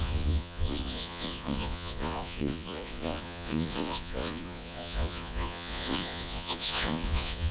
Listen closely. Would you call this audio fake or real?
fake